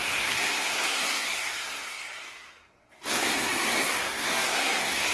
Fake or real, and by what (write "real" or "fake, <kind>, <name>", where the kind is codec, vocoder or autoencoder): fake, codec, SNAC